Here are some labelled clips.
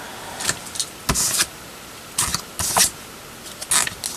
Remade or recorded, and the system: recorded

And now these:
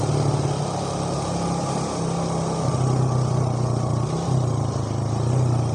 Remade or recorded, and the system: recorded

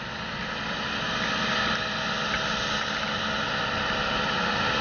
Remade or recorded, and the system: recorded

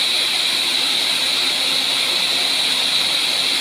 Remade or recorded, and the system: recorded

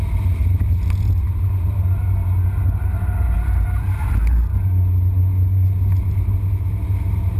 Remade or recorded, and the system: recorded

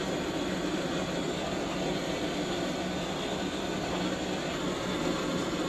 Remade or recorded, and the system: recorded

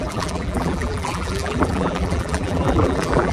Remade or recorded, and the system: remade, vocoder, BigVGAN v2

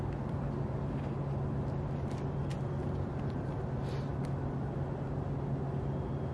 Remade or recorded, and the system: recorded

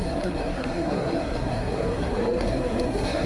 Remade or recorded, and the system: remade, codec, SNAC